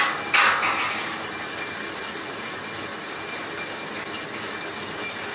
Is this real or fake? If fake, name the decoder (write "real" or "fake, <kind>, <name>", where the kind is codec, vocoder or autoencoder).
real